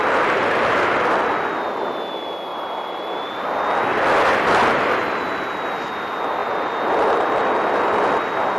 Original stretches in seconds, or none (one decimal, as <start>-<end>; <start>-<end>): 0.0-2.5; 3.4-3.9; 5.2-6.4; 8.2-8.6

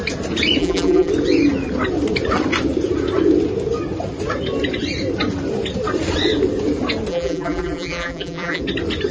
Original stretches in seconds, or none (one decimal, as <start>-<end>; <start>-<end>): 0.0-0.6; 1.1-7.1; 8.6-9.1

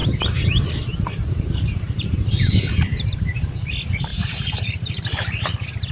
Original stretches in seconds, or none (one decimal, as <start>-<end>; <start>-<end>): 3.5-4.1; 5.5-5.9

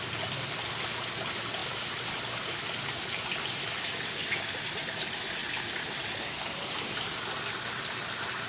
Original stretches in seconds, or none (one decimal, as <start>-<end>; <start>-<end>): 0.0-1.6; 2.2-5.4; 7.0-8.5